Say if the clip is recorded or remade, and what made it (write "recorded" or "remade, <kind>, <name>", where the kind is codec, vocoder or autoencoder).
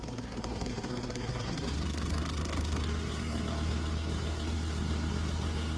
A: remade, codec, SNAC